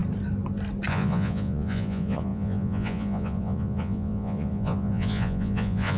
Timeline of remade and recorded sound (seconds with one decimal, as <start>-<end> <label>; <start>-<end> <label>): 0.0-0.9 recorded; 0.9-6.0 remade